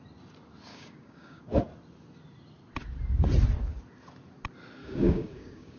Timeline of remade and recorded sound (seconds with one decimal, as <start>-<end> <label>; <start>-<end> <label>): 0.0-0.7 recorded; 0.7-1.4 remade; 1.4-4.8 recorded; 4.8-5.8 remade